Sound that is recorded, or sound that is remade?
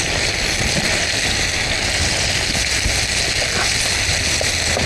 recorded